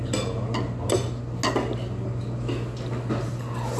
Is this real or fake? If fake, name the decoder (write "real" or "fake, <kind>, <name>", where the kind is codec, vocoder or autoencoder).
real